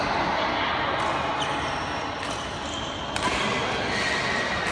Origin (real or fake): real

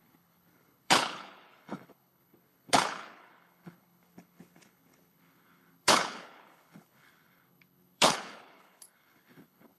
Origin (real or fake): fake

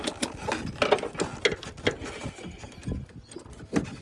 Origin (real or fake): real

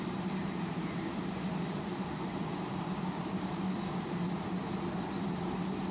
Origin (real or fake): fake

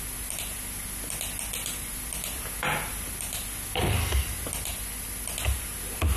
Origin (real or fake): real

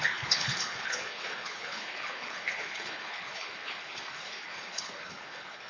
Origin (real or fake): fake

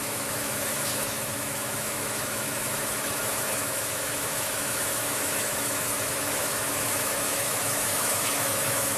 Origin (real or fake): fake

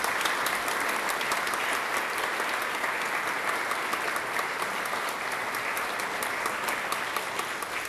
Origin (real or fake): real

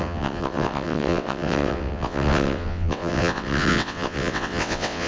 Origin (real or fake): fake